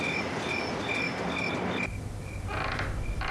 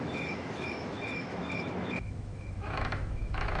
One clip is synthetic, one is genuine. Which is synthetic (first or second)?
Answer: second